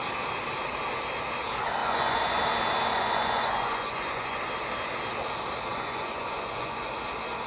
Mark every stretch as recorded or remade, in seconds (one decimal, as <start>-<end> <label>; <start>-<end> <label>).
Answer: 0.0-1.8 recorded; 1.8-2.4 remade; 2.4-2.9 recorded; 2.9-4.5 remade; 4.5-5.7 recorded; 5.7-6.9 remade; 6.9-7.5 recorded